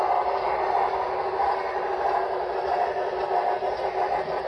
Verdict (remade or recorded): recorded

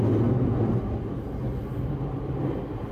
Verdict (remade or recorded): recorded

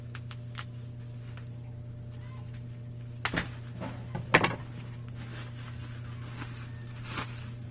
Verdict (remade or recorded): recorded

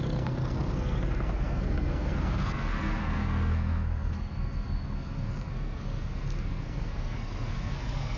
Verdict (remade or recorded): remade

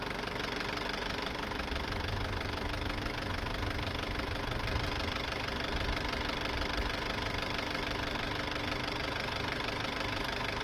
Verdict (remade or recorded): remade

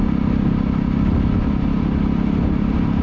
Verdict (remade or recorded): recorded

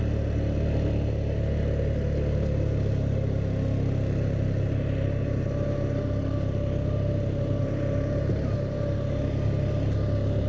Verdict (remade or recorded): recorded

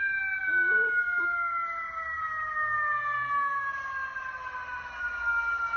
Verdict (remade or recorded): recorded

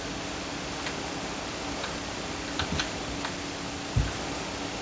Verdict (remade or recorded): recorded